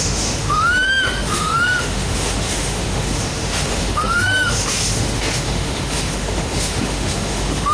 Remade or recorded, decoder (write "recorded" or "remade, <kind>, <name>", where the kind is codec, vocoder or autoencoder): remade, autoencoder, DAC-VAE